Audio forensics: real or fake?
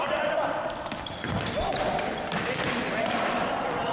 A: fake